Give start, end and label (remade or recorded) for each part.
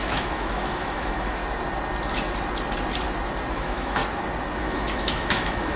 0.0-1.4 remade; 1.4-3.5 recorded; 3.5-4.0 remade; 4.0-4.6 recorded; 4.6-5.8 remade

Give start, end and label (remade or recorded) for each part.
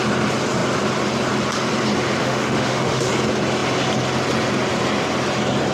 0.0-2.2 recorded; 2.2-3.1 remade; 3.1-5.7 recorded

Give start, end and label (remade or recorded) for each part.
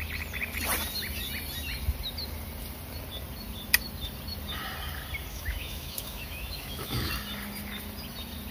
0.0-5.3 recorded; 5.3-7.1 remade; 7.1-8.5 recorded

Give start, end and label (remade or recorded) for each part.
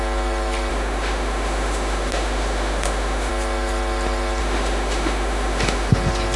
0.0-0.7 recorded; 0.7-3.3 remade; 3.3-4.4 recorded; 4.4-5.9 remade; 5.9-6.4 recorded